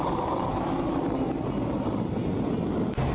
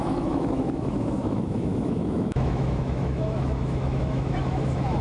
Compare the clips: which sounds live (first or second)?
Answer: first